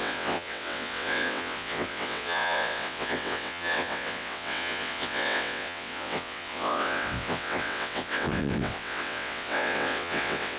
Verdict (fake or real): fake